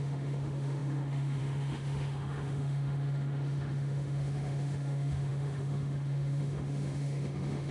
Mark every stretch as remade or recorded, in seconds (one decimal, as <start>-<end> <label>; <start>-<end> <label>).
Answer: 0.0-7.7 remade